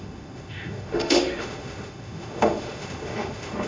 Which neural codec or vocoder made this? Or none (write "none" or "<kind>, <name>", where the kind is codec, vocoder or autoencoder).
autoencoder, DAC-VAE